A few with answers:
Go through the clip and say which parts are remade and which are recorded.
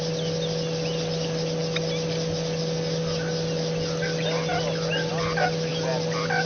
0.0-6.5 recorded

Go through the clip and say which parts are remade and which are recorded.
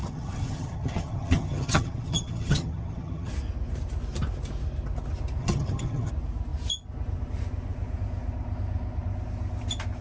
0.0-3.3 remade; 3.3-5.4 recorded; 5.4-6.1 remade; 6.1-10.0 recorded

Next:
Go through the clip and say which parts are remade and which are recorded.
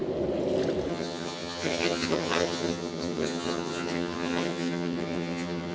0.0-0.9 recorded; 0.9-5.7 remade